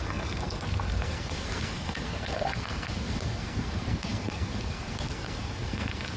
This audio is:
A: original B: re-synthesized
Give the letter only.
B